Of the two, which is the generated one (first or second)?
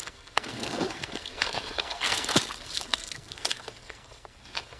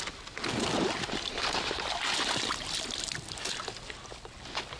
first